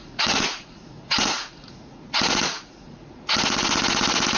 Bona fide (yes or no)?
no